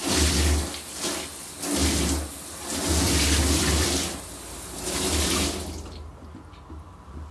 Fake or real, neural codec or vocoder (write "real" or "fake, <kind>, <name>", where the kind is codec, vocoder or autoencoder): real